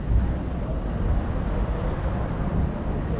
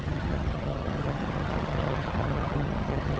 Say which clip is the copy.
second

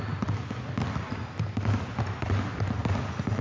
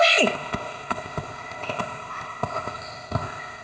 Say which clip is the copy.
second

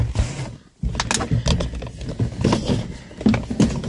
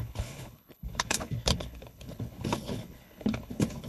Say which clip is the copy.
second